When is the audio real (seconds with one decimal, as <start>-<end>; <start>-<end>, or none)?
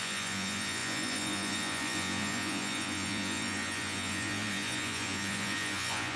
none